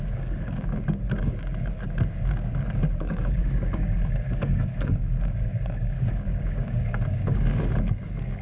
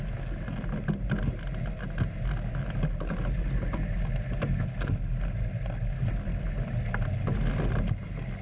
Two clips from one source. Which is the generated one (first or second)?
first